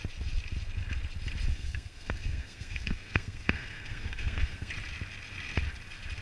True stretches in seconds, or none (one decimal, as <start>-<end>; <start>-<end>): 0.0-1.5; 4.7-6.2